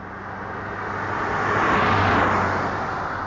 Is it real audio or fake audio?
real